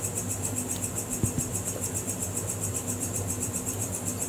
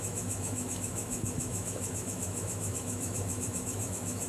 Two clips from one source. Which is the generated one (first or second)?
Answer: second